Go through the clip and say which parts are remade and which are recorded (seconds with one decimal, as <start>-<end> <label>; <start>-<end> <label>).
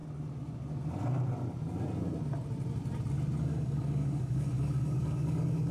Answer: 0.0-3.4 recorded; 3.4-5.7 remade